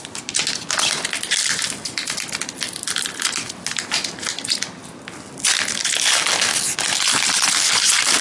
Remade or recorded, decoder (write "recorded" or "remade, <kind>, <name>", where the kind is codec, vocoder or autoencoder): recorded